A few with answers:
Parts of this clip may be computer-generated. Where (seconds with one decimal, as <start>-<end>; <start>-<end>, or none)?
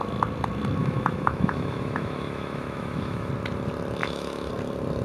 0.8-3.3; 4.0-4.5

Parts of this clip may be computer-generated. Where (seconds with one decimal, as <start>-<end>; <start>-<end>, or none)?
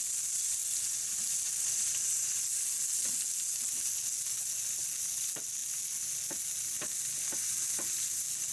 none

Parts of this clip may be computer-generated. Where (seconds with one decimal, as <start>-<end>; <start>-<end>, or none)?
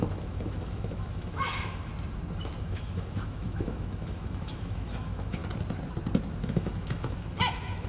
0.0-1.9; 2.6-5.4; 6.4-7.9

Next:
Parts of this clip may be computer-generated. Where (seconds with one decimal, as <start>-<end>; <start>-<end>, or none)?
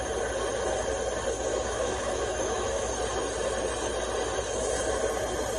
1.5-2.9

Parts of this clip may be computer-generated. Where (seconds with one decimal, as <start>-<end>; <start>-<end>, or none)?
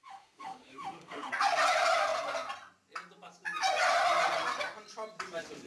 0.0-1.3